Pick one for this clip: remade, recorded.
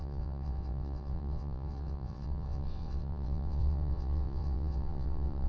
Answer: remade